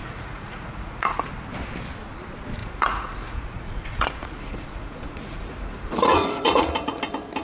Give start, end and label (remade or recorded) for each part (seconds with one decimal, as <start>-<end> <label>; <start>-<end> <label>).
0.0-1.3 remade; 1.3-2.6 recorded; 2.6-7.0 remade; 7.0-7.4 recorded